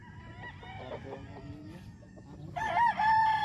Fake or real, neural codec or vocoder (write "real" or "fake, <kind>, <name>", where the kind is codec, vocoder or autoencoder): real